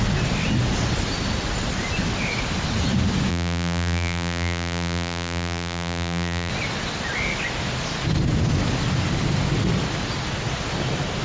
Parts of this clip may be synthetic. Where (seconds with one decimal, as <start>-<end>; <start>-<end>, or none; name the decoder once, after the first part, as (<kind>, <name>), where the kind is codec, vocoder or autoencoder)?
3.3-6.5 (vocoder, BigVGAN v2)